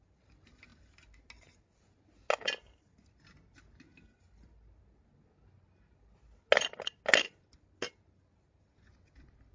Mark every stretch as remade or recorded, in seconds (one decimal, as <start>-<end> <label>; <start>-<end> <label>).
0.0-9.5 recorded